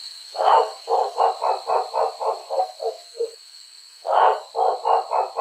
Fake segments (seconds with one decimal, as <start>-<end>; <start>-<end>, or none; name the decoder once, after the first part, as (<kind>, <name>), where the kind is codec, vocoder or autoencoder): 0.0-1.2 (codec, SNAC); 2.4-4.5